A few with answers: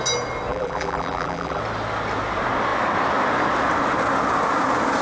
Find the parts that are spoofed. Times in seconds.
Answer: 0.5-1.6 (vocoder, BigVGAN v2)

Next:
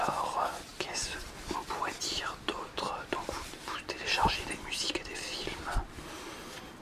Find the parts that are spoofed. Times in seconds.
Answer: none